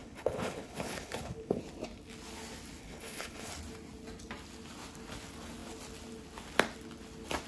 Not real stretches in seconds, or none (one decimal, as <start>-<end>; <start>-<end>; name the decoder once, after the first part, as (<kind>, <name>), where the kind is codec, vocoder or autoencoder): 0.0-1.6 (codec, HILCodec); 2.8-3.5